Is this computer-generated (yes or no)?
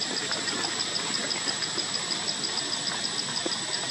no